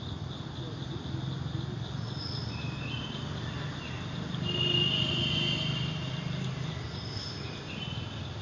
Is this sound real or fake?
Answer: real